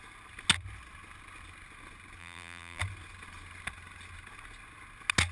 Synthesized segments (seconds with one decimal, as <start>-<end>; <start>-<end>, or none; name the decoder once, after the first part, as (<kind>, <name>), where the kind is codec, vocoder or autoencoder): 2.2-2.8 (vocoder, BigVGAN v2)